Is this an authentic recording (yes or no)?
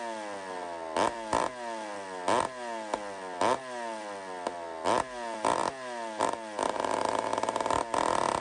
yes